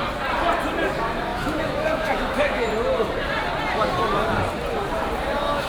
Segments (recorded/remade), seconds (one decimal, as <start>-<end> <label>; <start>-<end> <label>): 0.0-1.3 recorded; 1.3-2.7 remade; 2.7-5.7 recorded